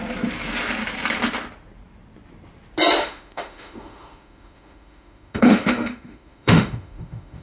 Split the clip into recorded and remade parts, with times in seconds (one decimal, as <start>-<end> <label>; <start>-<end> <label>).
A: 0.0-3.0 recorded; 3.0-7.4 remade